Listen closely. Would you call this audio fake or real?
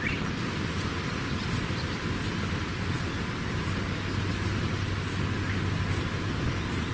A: real